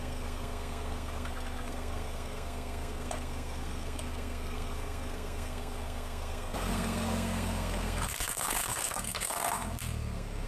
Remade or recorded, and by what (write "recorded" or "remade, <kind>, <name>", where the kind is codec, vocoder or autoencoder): remade, codec, SNAC